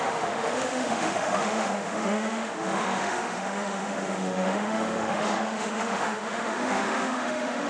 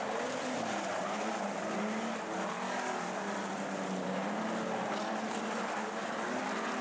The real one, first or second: second